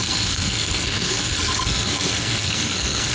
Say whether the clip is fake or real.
fake